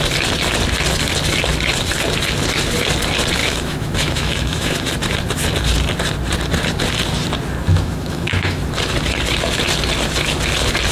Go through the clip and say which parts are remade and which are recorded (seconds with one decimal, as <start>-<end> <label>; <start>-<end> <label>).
0.0-3.4 recorded; 3.4-4.9 remade; 4.9-7.7 recorded; 7.7-8.6 remade; 8.6-10.9 recorded